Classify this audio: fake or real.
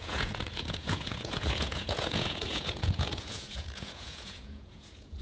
fake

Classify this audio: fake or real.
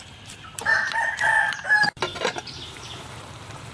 fake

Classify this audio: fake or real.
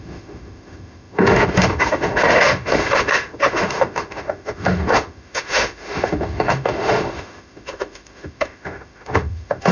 fake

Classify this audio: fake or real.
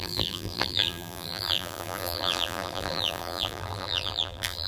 fake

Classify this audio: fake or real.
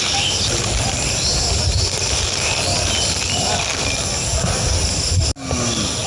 real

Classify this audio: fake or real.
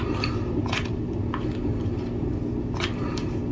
real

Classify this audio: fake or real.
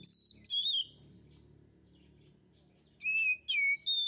real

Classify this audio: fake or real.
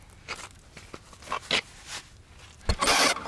real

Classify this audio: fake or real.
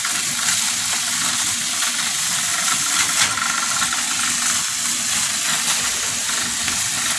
real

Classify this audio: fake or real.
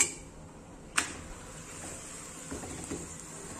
real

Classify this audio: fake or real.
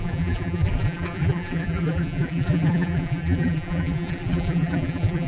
fake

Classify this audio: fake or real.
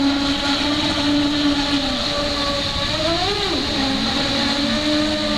real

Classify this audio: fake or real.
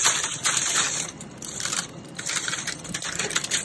fake